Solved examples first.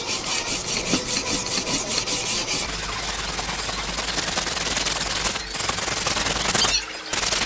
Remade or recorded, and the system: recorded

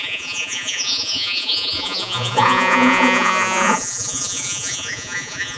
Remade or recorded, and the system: remade, vocoder, Vocos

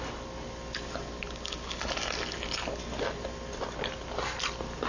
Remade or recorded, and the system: recorded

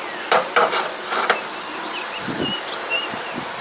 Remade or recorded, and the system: recorded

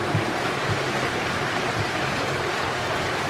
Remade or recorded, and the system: remade, vocoder, BigVGAN v2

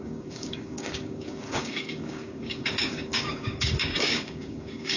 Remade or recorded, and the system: remade, codec, DAC